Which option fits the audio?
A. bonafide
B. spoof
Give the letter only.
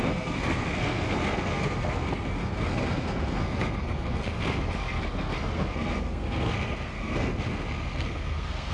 B